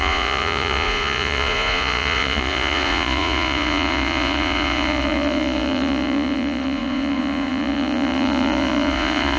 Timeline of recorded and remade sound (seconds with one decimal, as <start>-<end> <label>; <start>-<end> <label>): 0.0-9.4 remade